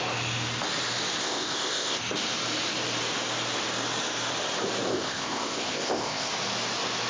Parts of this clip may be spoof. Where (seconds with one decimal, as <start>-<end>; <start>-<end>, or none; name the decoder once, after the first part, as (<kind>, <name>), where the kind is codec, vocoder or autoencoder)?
1.2-2.0 (codec, ZipCodec); 4.9-6.3